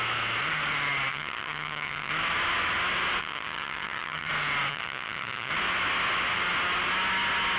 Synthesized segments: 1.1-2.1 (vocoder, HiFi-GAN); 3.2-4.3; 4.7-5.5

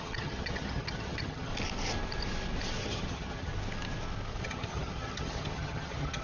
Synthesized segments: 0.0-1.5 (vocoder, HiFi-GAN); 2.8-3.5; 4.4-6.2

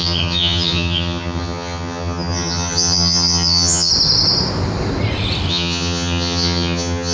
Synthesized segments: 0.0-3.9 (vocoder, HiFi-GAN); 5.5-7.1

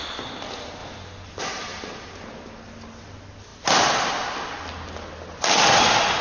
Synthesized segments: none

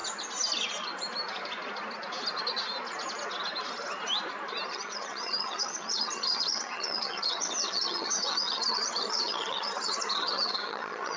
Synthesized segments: 4.7-11.2 (vocoder, HiFi-GAN)

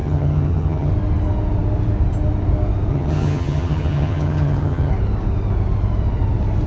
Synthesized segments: 0.0-0.9 (vocoder, HiFi-GAN); 2.9-4.9

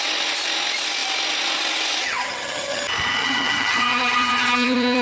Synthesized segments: 2.0-2.8 (vocoder, HiFi-GAN); 3.2-5.0

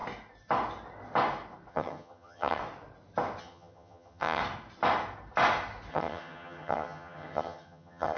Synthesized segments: 1.7-2.6 (vocoder, HiFi-GAN); 3.4-4.4; 5.9-8.2